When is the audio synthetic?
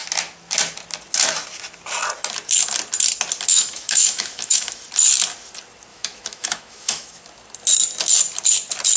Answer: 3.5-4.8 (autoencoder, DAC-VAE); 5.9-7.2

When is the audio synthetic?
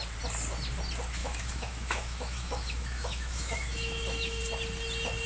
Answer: 1.2-4.4 (autoencoder, DAC-VAE)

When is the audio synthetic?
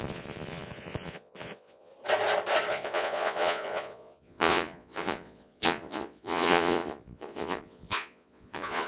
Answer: 0.0-1.9 (vocoder, Vocos); 2.7-8.9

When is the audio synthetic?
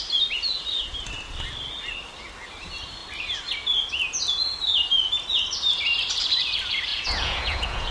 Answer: 6.9-7.9 (vocoder, Vocos)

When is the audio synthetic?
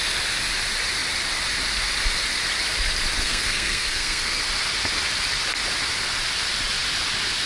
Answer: 3.2-4.4 (codec, SNAC)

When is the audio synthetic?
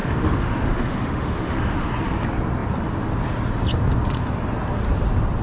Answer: 0.0-1.9 (autoencoder, DAC-VAE)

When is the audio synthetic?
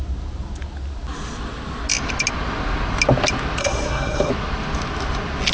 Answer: 3.6-4.3 (codec, SNAC)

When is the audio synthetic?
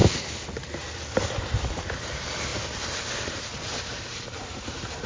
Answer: 1.4-3.9 (vocoder, BigVGAN v2); 4.4-5.1